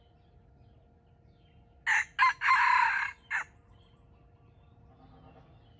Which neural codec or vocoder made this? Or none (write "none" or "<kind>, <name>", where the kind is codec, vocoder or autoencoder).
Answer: none